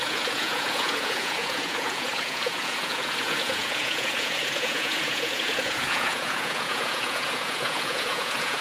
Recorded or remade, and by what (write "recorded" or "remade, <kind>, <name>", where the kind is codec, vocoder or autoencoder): remade, vocoder, Vocos